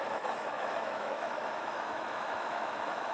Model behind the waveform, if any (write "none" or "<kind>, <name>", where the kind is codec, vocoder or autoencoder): autoencoder, DAC-VAE